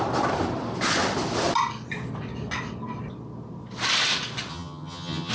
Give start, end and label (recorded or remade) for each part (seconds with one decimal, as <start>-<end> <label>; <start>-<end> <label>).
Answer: 0.0-4.5 recorded; 4.5-5.3 remade

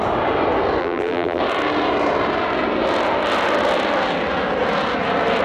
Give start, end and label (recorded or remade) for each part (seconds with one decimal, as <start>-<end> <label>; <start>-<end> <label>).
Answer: 0.0-0.8 recorded; 0.8-1.4 remade; 1.4-5.4 recorded

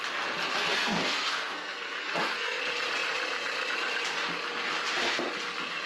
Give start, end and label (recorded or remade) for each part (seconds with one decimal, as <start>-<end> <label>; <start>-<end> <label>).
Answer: 0.0-0.6 recorded; 0.6-2.6 remade; 2.6-5.9 recorded

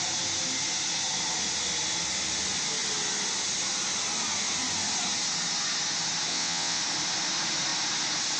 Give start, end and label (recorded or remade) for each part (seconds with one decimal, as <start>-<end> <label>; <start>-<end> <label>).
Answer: 0.0-6.3 recorded; 6.3-6.8 remade; 6.8-8.4 recorded

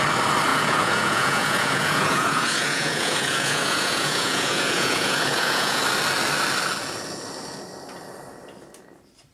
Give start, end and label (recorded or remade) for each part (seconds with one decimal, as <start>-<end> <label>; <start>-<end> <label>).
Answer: 0.0-0.5 recorded; 0.5-5.8 remade; 5.8-9.3 recorded